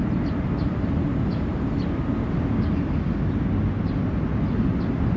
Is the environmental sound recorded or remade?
recorded